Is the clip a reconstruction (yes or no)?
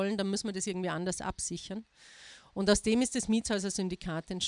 no